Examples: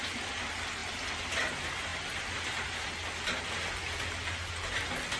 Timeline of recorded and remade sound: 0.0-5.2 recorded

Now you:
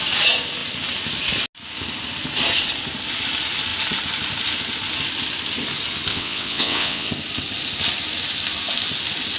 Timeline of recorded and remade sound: 0.0-6.1 recorded; 6.1-7.1 remade; 7.1-9.4 recorded

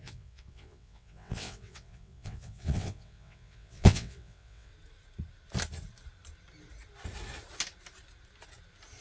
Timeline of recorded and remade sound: 0.0-4.7 remade; 4.7-9.0 recorded

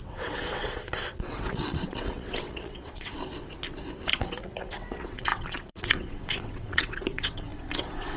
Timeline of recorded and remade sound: 0.0-3.1 remade; 3.1-4.1 recorded; 4.1-8.2 remade

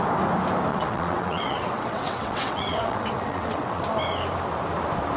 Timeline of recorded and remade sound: 0.0-0.7 recorded; 0.7-3.8 remade; 3.8-5.2 recorded

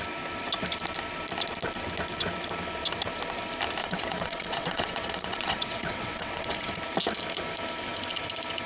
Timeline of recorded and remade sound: 0.0-3.8 recorded; 3.8-6.7 remade; 6.7-8.7 recorded